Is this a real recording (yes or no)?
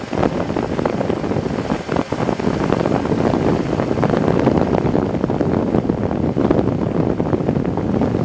yes